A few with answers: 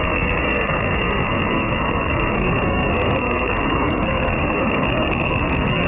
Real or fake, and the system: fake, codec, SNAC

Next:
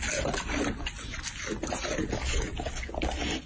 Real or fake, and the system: real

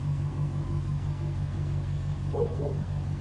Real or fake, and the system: fake, codec, SNAC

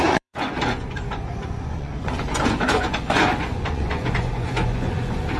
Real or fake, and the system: fake, vocoder, Vocos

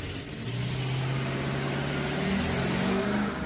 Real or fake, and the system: real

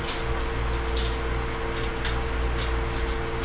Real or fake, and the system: real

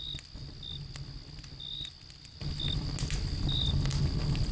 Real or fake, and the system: real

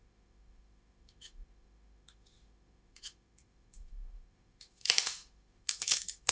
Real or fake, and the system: fake, autoencoder, DAC-VAE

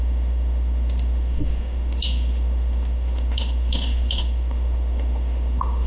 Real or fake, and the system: fake, autoencoder, DAC-VAE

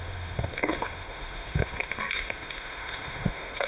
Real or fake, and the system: fake, autoencoder, DAC-VAE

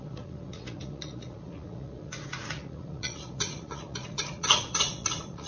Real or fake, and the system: fake, vocoder, Vocos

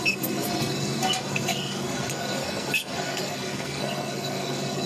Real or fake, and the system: fake, codec, SNAC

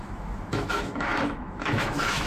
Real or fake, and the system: fake, autoencoder, DAC-VAE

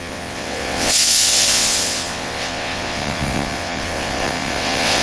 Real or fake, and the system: fake, vocoder, WaveNeXt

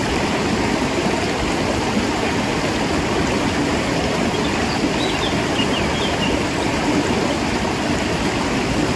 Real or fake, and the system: real